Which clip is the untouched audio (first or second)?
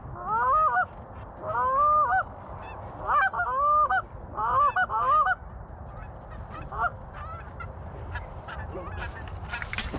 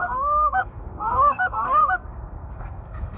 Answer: first